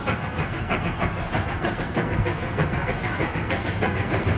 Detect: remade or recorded remade